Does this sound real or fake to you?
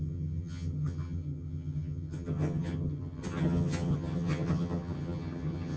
fake